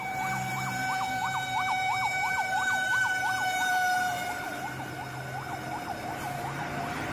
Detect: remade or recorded remade